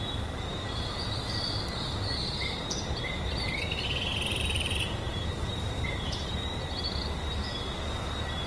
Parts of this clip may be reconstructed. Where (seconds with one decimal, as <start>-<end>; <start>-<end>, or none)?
0.5-1.2; 2.4-3.7; 4.3-7.2